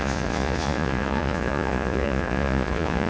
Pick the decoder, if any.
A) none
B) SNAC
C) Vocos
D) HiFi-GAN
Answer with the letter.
C